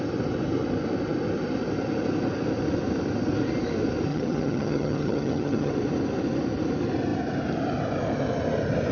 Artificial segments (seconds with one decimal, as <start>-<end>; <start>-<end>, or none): 4.1-5.7